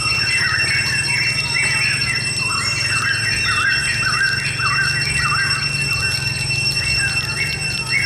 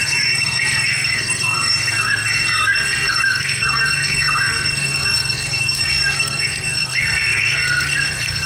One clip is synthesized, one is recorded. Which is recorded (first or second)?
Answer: first